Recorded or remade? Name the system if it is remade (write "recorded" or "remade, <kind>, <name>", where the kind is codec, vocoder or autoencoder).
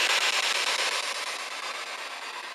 recorded